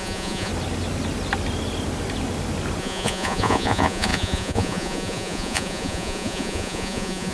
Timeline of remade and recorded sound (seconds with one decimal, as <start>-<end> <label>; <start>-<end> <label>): 0.0-0.5 remade; 0.5-2.8 recorded; 2.8-7.3 remade